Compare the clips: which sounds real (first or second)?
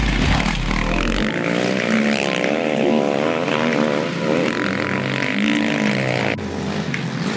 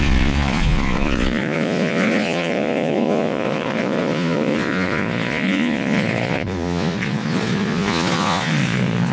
first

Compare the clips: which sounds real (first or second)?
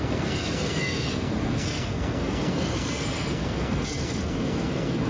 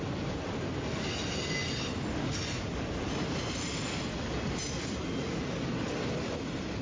second